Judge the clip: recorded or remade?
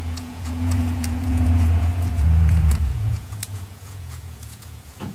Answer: remade